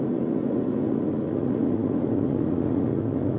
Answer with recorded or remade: remade